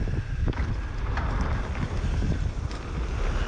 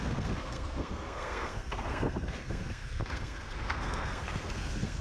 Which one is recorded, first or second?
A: first